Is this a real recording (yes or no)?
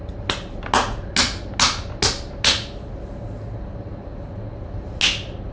yes